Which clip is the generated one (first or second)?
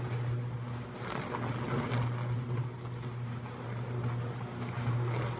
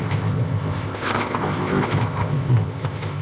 second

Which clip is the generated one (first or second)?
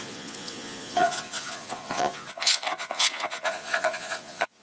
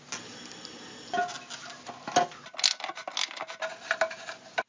first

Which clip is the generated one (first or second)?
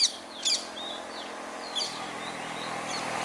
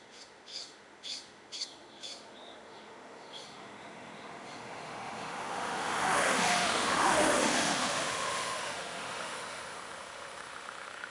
second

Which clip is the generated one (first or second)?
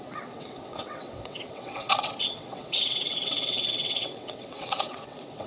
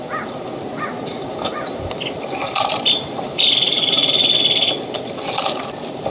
first